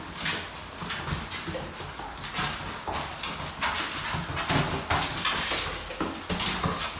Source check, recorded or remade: recorded